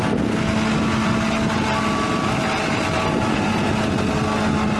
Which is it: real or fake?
real